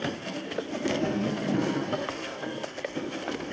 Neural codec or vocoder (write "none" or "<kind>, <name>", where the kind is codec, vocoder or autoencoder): codec, SNAC